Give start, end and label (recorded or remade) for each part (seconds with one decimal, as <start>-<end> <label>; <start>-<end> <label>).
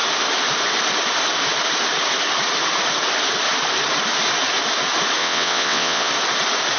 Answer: 0.0-5.2 recorded; 5.2-6.1 remade; 6.1-6.8 recorded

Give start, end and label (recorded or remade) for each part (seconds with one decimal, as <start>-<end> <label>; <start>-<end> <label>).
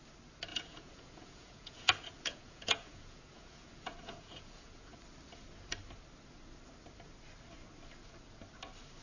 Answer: 0.0-0.5 recorded; 0.5-4.9 remade; 4.9-9.0 recorded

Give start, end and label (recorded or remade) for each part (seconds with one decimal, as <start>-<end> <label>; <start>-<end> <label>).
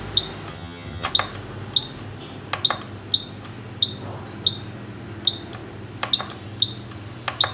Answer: 0.0-0.5 recorded; 0.5-1.1 remade; 1.1-7.5 recorded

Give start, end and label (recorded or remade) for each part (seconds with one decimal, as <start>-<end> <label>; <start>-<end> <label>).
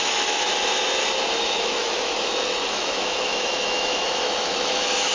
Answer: 0.0-0.5 remade; 0.5-1.4 recorded; 1.4-5.1 remade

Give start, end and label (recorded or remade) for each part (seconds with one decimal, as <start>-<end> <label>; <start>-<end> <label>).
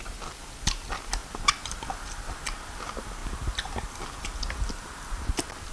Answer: 0.0-5.7 recorded